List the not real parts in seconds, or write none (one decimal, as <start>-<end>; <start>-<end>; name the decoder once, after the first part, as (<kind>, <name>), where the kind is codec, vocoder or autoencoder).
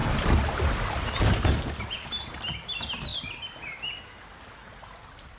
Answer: 0.0-1.1 (vocoder, BigVGAN v2); 3.1-3.8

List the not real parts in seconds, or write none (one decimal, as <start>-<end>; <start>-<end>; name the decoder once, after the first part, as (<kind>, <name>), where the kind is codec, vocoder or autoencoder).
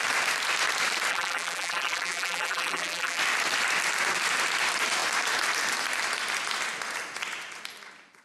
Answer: 1.1-3.2 (vocoder, BigVGAN v2)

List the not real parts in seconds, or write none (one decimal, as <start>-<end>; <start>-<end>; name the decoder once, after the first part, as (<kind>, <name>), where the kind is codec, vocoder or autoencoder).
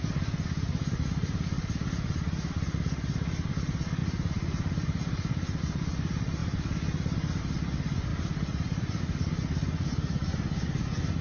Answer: 0.8-1.4 (vocoder, BigVGAN v2); 4.0-5.6; 8.1-9.0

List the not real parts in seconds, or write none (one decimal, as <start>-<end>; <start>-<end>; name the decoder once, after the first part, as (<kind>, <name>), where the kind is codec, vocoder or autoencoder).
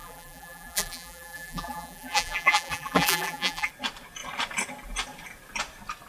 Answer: 0.0-3.7 (vocoder, BigVGAN v2)